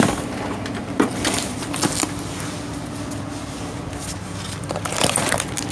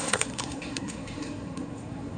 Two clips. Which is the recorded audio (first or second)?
first